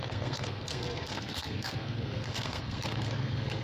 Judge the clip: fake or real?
fake